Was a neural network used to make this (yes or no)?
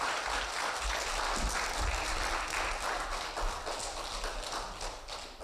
no